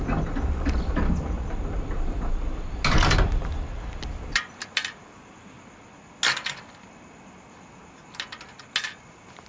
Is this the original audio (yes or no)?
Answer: yes